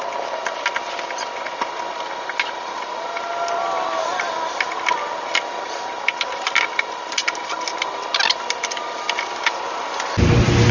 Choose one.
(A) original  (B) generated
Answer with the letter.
A